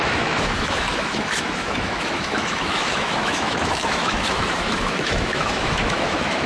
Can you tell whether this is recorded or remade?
remade